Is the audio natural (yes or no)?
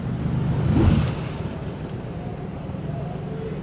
yes